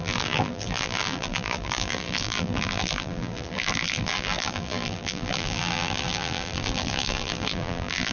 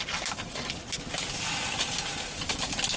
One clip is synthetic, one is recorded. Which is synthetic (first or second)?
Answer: first